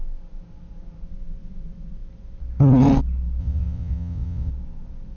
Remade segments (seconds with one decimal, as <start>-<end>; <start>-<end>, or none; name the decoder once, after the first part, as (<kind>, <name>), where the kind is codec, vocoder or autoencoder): 3.4-4.5 (vocoder, WaveNeXt)